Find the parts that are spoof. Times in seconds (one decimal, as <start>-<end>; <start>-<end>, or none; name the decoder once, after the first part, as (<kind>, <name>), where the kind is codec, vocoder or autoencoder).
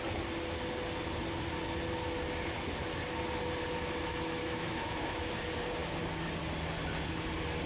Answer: 4.4-5.3 (autoencoder, DAC-VAE)